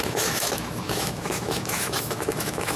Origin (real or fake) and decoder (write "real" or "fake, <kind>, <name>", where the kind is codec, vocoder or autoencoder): fake, autoencoder, DAC-VAE